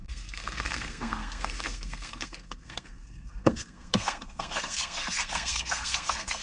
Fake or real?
fake